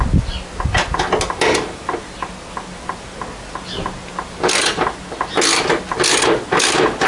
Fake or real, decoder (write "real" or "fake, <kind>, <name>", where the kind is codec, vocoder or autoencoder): real